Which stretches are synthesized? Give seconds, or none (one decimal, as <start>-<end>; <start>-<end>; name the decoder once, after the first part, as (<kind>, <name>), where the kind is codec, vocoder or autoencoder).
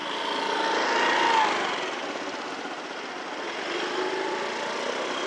none